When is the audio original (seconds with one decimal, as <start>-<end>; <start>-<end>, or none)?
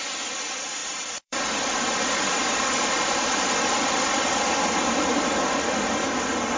0.0-0.8; 4.6-6.6